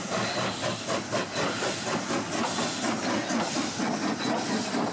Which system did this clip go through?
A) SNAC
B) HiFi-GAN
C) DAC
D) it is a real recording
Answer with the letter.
D